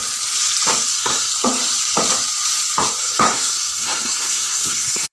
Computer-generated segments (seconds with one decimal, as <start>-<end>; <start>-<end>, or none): 0.9-1.3; 3.0-5.1